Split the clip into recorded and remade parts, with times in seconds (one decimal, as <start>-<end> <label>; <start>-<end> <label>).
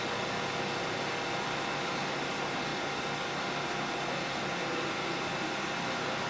0.0-6.3 recorded